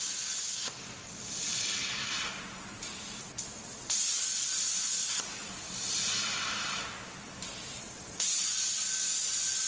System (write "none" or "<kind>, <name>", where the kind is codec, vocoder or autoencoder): none